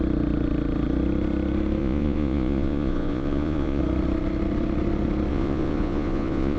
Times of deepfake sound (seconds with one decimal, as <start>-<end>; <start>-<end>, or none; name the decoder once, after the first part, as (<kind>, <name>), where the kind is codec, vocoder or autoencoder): 1.8-3.8 (vocoder, Vocos); 5.3-6.6